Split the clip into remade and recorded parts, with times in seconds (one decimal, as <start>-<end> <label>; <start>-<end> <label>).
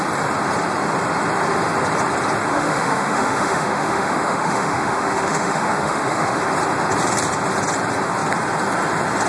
0.0-2.5 recorded; 2.5-6.4 remade; 6.4-9.3 recorded